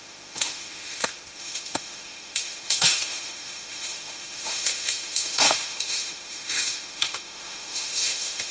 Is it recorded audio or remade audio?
remade